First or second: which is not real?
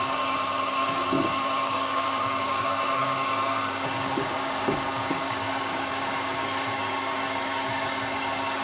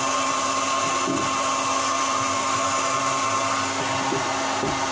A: first